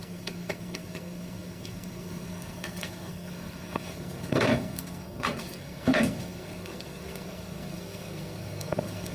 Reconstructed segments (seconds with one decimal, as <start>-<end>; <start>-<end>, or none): 0.0-9.1

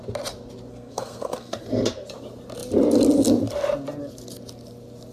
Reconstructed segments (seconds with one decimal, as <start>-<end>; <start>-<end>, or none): 0.7-1.6

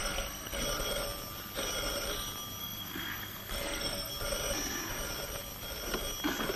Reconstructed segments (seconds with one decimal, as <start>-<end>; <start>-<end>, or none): 0.0-0.6; 2.6-4.1

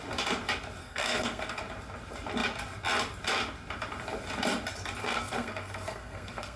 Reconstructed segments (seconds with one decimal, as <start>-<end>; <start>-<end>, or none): 0.8-1.6; 5.0-6.6